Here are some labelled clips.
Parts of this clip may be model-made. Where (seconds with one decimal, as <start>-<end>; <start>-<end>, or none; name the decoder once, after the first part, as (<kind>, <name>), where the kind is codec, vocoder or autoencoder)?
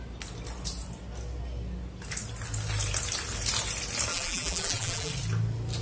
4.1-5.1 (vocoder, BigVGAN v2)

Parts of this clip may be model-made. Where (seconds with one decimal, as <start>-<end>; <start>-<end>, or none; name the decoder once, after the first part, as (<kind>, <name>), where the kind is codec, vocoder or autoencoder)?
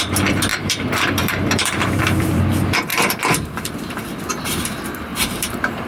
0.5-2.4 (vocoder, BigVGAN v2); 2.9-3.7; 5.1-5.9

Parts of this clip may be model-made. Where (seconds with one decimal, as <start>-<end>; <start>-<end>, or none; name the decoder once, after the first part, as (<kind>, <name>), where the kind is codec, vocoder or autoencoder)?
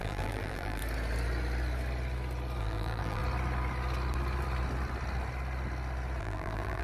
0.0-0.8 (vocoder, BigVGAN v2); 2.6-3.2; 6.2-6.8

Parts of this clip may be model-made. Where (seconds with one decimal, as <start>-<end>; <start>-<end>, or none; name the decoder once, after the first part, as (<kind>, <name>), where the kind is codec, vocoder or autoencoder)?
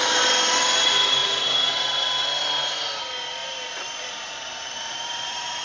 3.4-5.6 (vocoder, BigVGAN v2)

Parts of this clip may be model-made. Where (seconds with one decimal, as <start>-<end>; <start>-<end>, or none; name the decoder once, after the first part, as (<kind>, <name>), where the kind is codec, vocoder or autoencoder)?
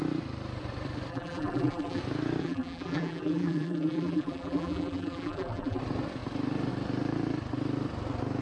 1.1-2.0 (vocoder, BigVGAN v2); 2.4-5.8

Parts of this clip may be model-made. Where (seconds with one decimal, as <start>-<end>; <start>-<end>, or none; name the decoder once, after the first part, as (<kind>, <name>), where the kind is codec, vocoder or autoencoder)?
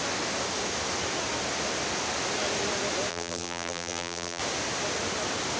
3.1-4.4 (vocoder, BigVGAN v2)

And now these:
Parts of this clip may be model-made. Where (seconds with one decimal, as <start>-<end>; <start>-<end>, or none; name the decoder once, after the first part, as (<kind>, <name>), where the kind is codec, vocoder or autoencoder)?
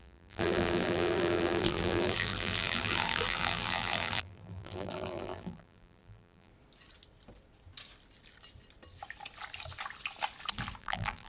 0.0-6.5 (vocoder, BigVGAN v2); 10.8-11.3